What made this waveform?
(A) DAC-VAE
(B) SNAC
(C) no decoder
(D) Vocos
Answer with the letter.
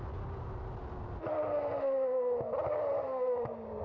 C